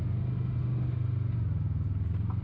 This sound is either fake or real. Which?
real